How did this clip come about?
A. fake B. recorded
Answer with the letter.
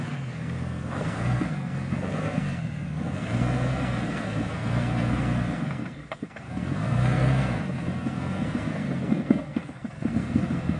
A